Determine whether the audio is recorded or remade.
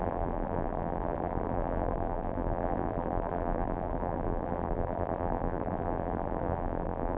remade